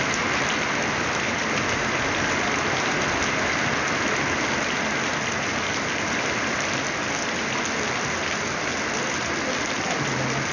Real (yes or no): yes